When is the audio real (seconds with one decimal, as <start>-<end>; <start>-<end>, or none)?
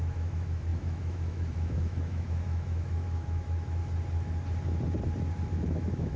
3.8-5.5